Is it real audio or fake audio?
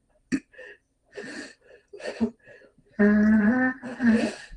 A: real